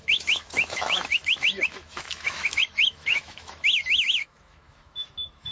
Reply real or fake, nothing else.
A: fake